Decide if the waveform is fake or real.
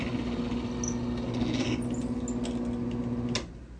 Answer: real